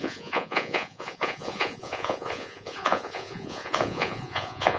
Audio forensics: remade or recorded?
remade